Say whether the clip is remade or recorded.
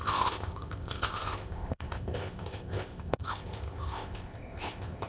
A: remade